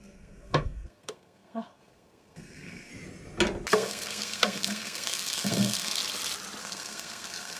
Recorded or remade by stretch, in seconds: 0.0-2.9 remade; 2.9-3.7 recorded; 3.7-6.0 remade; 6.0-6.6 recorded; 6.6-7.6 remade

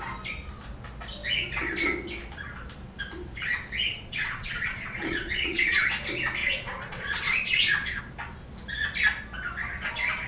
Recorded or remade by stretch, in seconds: 0.0-3.9 recorded; 3.9-5.9 remade; 5.9-6.4 recorded; 6.4-8.0 remade; 8.0-10.3 recorded

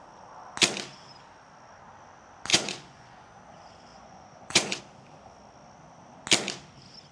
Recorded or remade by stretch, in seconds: 0.0-2.5 recorded; 2.5-3.4 remade; 3.4-3.9 recorded; 3.9-4.8 remade; 4.8-7.1 recorded